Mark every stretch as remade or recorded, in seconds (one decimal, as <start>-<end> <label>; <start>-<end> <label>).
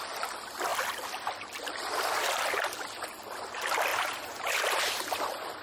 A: 0.0-3.9 recorded; 3.9-4.5 remade; 4.5-5.6 recorded